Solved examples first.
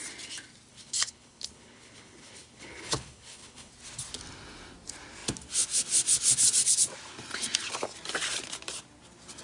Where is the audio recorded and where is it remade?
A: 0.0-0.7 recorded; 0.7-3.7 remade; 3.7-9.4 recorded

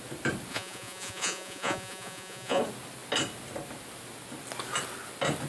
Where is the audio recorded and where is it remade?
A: 0.0-0.5 recorded; 0.5-2.6 remade; 2.6-5.5 recorded

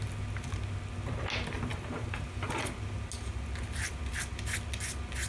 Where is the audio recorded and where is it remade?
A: 0.0-1.7 recorded; 1.7-2.7 remade; 2.7-5.3 recorded

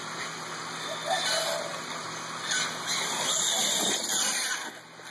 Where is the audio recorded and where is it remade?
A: 0.0-5.1 recorded

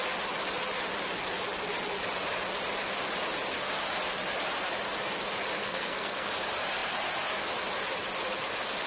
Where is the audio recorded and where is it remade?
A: 0.0-5.6 recorded; 5.6-6.3 remade; 6.3-8.9 recorded

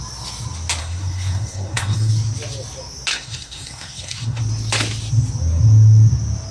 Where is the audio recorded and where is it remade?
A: 0.0-0.8 recorded; 0.8-2.1 remade; 2.1-3.1 recorded; 3.1-4.4 remade; 4.4-6.5 recorded